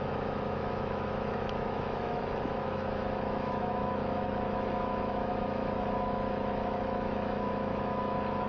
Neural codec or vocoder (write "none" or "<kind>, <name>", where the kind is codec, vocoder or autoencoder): autoencoder, DAC-VAE